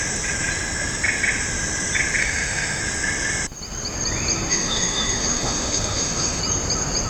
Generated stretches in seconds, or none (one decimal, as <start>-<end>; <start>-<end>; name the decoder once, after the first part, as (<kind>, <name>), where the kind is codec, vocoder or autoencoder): 2.2-2.8 (autoencoder, DAC-VAE); 4.5-6.4